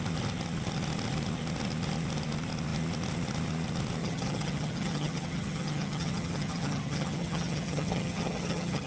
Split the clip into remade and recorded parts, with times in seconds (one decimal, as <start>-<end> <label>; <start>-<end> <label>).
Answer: 0.0-4.0 recorded; 4.0-8.9 remade